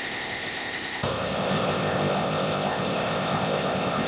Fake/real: fake